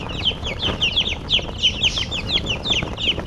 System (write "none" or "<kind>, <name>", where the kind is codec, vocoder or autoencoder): none